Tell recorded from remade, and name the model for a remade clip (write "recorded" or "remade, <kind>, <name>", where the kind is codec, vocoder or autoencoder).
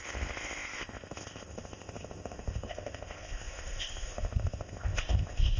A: remade, codec, ZipCodec